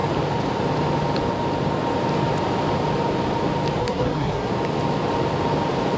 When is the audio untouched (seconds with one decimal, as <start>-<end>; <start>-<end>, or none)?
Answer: 0.0-3.8; 4.5-6.0